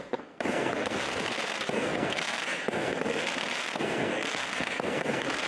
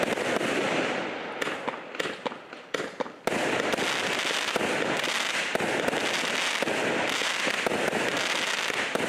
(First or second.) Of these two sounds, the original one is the second